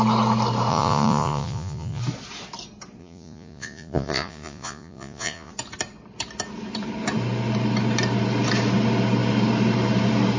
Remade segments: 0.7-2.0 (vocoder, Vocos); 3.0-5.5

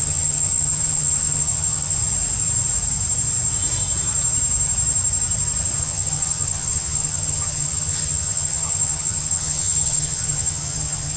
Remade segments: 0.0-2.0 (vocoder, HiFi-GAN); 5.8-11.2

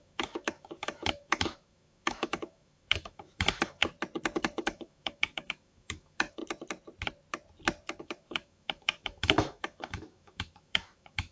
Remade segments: 0.0-3.8 (autoencoder, DAC-VAE); 4.4-6.4; 8.0-11.3

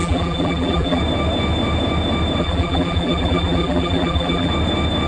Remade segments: 0.0-1.0 (vocoder, BigVGAN v2); 2.4-4.5

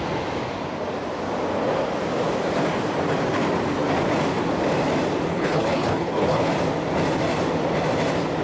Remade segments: 5.3-6.5 (codec, HILCodec)

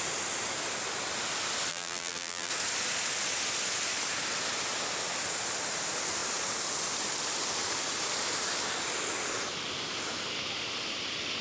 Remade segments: 1.7-2.5 (vocoder, BigVGAN v2)

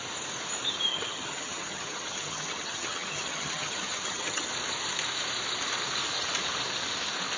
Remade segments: 0.9-4.5 (vocoder, HiFi-GAN)